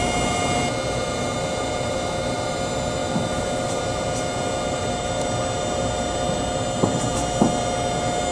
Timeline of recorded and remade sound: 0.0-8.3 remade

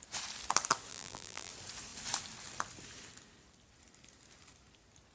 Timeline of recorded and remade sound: 0.0-0.9 recorded; 0.9-1.5 remade; 1.5-5.1 recorded

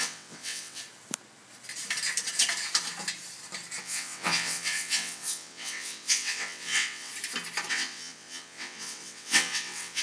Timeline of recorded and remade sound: 0.0-0.8 remade; 0.8-3.8 recorded; 3.8-7.1 remade; 7.1-7.7 recorded; 7.7-10.0 remade

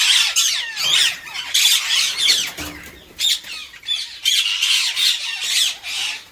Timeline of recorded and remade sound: 0.0-6.3 recorded

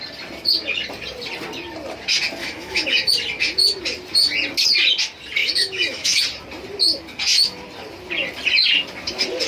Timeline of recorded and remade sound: 0.0-2.4 recorded; 2.4-3.1 remade; 3.1-5.4 recorded; 5.4-6.2 remade; 6.2-9.5 recorded

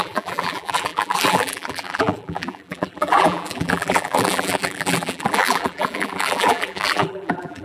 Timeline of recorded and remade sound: 0.0-7.6 remade

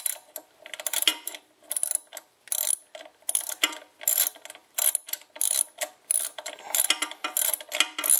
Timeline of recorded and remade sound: 0.0-8.2 recorded

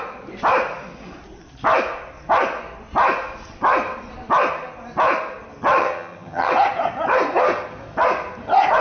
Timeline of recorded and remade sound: 0.0-5.8 recorded; 5.8-6.5 remade; 6.5-8.8 recorded